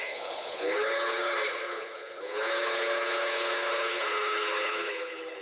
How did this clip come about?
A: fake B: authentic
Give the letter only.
A